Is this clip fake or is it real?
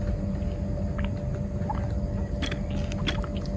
real